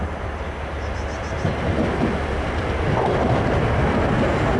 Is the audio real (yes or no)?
yes